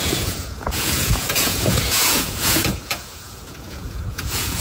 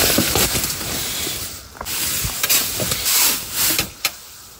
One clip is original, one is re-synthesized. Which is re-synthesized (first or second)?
first